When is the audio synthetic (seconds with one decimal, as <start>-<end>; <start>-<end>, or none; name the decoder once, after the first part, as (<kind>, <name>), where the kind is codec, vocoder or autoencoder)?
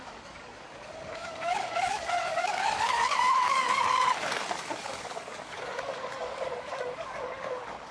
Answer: 0.0-7.9 (codec, DAC)